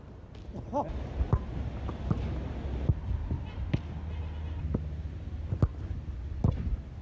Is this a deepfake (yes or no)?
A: no